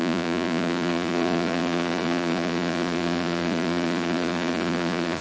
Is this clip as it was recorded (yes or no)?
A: no